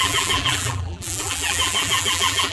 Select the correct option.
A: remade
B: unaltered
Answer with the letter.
A